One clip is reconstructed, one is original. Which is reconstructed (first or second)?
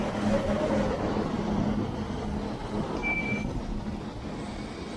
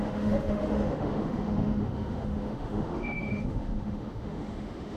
second